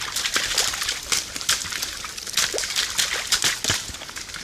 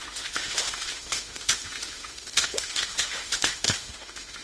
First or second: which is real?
first